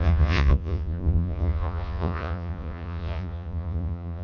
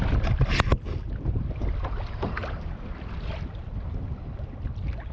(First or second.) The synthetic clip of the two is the first